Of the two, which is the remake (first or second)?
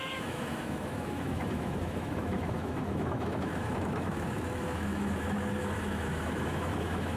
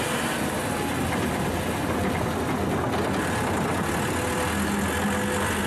first